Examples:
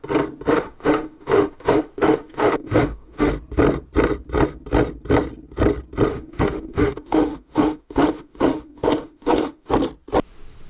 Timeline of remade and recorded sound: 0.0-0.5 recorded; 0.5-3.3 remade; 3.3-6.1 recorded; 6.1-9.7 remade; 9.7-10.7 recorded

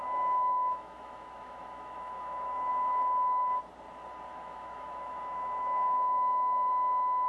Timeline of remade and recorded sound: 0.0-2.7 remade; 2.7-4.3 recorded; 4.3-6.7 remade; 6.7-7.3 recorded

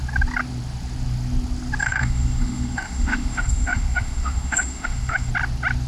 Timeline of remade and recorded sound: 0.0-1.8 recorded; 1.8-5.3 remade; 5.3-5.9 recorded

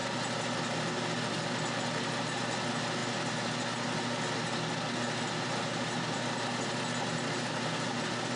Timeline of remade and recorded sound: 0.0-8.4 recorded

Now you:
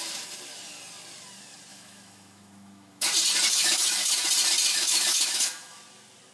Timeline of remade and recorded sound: 0.0-1.7 recorded; 1.7-3.1 remade; 3.1-3.5 recorded; 3.5-4.1 remade; 4.1-4.7 recorded; 4.7-5.8 remade; 5.8-6.3 recorded